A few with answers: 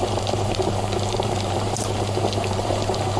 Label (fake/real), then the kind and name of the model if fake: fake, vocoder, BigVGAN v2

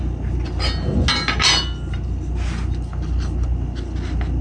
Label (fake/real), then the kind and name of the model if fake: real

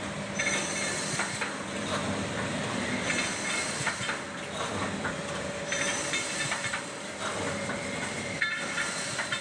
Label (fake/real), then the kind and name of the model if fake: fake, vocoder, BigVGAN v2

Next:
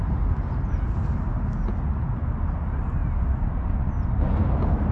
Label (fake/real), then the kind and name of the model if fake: real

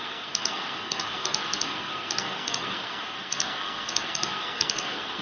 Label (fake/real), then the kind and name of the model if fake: fake, codec, SNAC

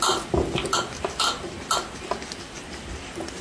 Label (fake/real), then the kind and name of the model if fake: real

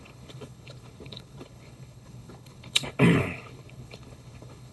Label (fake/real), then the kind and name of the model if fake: fake, codec, HILCodec